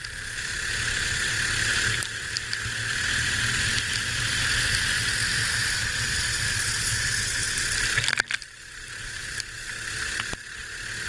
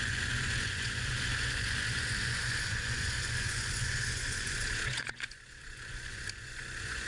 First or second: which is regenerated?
second